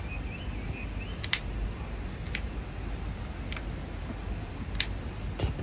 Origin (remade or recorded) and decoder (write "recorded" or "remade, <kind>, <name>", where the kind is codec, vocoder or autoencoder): recorded